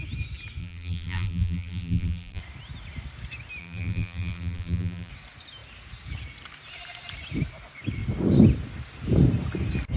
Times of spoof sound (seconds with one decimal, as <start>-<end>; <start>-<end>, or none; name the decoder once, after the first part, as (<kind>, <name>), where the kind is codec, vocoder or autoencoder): 0.6-2.4 (vocoder, BigVGAN v2); 3.6-5.1